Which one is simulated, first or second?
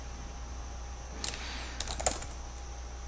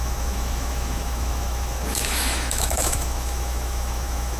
second